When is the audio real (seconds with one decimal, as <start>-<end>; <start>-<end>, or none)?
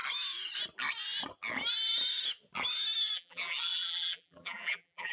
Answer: 0.0-3.1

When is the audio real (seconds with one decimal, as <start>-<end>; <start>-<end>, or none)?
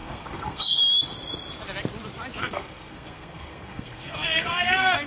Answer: 0.8-2.4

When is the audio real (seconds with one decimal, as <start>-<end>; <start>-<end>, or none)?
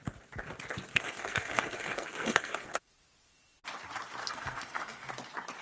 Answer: 0.0-0.9; 2.9-4.2; 5.1-5.6